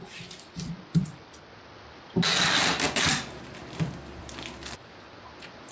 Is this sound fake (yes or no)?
no